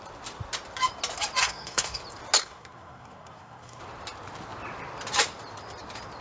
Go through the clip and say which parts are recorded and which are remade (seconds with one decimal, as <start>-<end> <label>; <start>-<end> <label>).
0.0-1.4 recorded; 1.4-2.0 remade; 2.0-2.4 recorded; 2.4-3.8 remade; 3.8-6.2 recorded